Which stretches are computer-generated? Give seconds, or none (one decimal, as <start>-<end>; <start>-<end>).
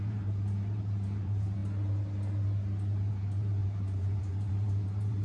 0.0-1.6; 3.1-5.2